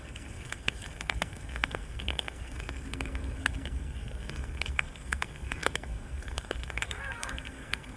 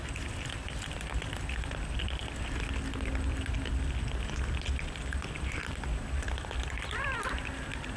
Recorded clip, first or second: second